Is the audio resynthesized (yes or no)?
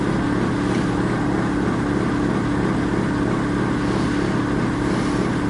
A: no